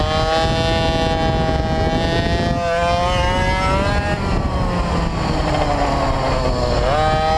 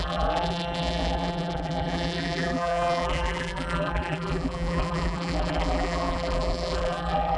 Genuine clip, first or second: first